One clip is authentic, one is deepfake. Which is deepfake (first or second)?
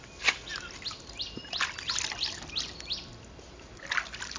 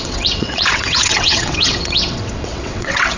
second